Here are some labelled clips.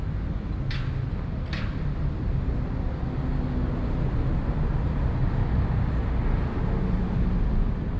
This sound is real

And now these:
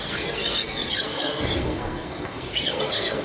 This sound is fake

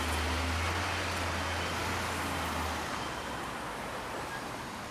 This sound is real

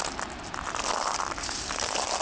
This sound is real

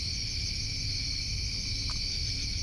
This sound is real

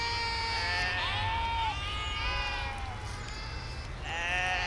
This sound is real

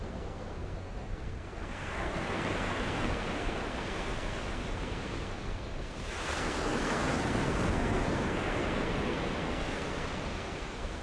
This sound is fake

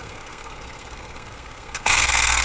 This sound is fake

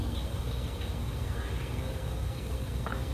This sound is fake